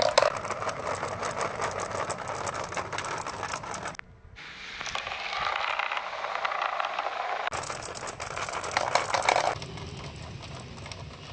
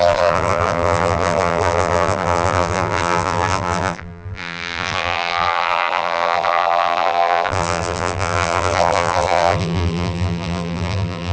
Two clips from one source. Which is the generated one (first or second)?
second